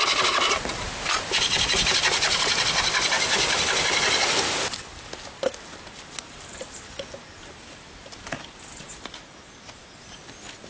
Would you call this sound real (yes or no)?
yes